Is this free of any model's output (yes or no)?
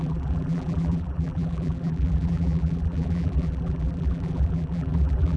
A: no